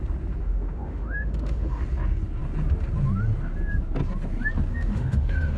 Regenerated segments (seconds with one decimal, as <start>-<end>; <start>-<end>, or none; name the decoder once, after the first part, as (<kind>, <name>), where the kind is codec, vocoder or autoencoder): 0.4-1.8 (autoencoder, DAC-VAE); 4.7-5.6